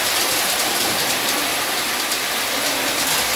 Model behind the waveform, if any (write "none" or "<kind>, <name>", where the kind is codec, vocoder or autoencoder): none